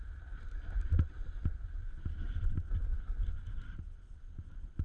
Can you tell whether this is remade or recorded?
recorded